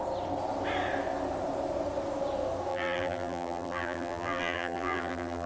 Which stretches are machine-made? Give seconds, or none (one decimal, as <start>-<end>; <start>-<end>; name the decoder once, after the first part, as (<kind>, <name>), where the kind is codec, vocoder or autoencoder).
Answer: 2.7-5.5 (vocoder, BigVGAN v2)